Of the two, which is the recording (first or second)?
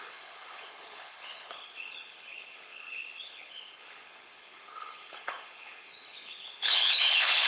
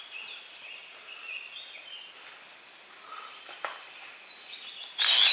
second